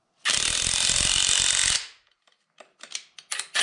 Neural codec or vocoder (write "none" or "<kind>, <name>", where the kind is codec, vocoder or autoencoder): none